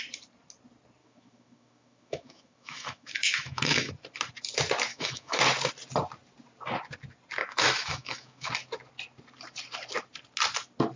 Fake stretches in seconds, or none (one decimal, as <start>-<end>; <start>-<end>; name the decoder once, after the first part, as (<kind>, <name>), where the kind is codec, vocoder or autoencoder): 1.0-3.9 (autoencoder, DAC-VAE); 4.9-5.4; 7.4-8.5